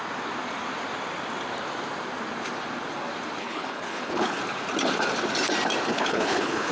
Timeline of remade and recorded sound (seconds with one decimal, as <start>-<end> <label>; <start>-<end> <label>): 0.0-3.4 recorded; 3.4-4.4 remade; 4.4-5.9 recorded; 5.9-6.7 remade